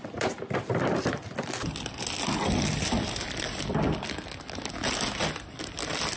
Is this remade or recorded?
recorded